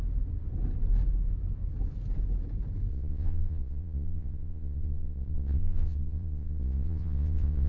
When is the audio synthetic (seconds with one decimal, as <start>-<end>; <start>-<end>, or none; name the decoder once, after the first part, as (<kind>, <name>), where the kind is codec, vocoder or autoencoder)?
2.9-7.7 (vocoder, Vocos)